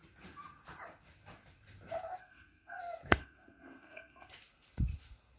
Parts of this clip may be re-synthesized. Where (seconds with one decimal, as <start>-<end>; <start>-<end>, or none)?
2.2-2.8; 3.2-4.3